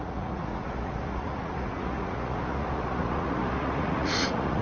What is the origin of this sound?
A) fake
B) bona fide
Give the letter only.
A